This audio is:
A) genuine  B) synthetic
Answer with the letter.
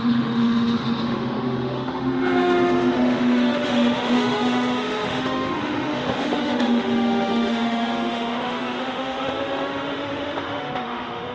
B